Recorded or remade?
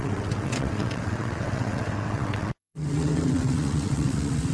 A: remade